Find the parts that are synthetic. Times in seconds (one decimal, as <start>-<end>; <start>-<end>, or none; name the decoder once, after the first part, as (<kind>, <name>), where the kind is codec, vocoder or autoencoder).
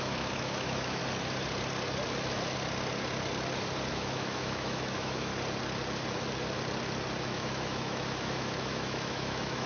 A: 0.0-1.0 (autoencoder, DAC-VAE); 3.9-5.3; 7.3-9.7